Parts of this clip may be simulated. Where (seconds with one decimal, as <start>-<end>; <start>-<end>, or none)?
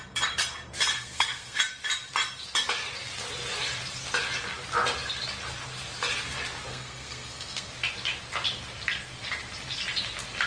0.9-1.6; 6.7-7.7